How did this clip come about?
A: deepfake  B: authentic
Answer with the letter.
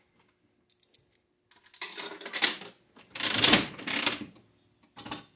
B